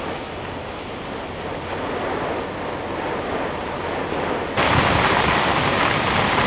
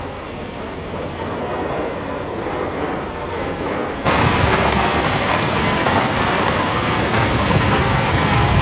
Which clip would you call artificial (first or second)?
second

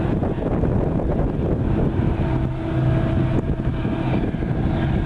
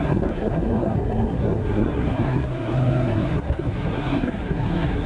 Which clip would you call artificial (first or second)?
second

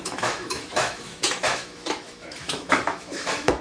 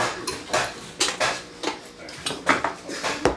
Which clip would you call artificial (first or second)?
first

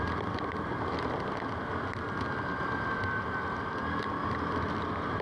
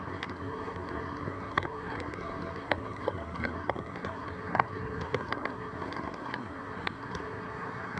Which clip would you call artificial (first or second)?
second